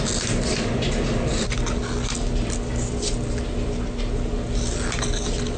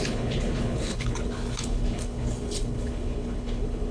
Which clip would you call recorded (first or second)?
first